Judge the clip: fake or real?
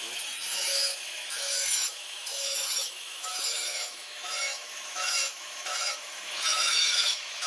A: fake